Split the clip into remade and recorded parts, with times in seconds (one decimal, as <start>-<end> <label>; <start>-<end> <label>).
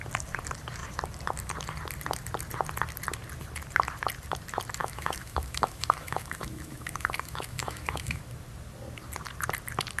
0.0-4.8 recorded; 4.8-8.2 remade; 8.2-10.0 recorded